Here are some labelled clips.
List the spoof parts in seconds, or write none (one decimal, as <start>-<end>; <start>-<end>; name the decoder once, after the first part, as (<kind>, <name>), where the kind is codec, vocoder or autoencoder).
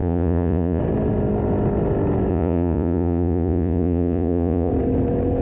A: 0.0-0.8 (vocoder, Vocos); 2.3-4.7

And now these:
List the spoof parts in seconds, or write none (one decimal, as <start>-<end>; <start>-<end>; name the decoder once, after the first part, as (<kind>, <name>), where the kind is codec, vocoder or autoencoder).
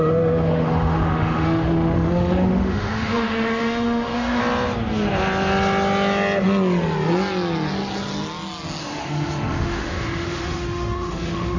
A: 0.0-4.4 (autoencoder, DAC-VAE); 8.8-11.6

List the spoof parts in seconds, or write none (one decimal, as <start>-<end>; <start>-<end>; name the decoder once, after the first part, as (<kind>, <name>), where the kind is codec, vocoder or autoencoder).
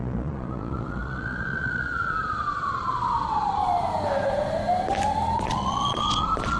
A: 0.0-3.6 (vocoder, Vocos); 5.4-6.6